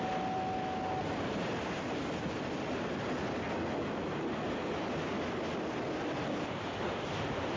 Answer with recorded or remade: recorded